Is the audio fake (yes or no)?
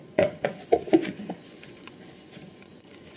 yes